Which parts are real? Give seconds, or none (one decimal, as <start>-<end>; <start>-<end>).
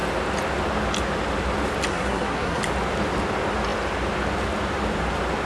0.0-1.9; 2.6-5.5